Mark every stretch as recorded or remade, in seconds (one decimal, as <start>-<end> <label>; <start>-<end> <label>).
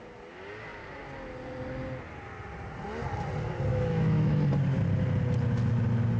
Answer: 0.0-3.7 recorded; 3.7-4.4 remade; 4.4-6.2 recorded